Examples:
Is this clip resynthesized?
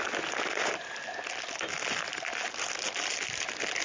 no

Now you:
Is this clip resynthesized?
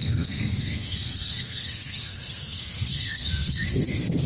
yes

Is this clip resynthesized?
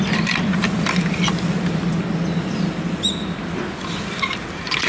no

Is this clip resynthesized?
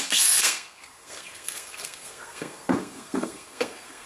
yes